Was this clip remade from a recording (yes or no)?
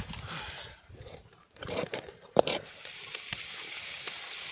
yes